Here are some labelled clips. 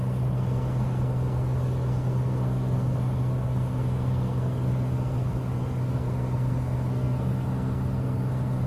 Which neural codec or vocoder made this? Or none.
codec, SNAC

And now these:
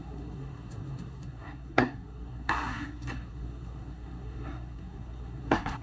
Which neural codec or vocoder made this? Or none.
codec, SNAC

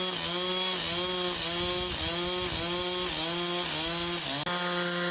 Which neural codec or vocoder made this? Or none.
none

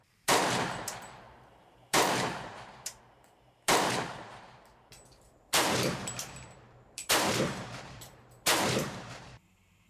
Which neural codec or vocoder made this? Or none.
vocoder, BigVGAN v2